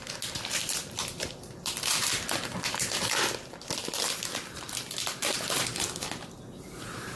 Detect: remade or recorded recorded